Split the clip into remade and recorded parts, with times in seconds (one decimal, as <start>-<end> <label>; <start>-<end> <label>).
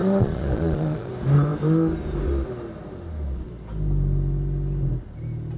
0.0-1.1 remade; 1.1-5.6 recorded